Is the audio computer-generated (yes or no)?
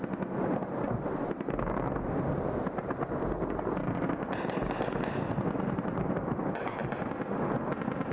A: no